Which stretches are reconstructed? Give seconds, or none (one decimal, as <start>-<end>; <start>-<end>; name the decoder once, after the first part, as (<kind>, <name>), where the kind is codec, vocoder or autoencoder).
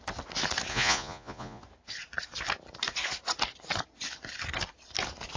0.7-1.6 (vocoder, Vocos)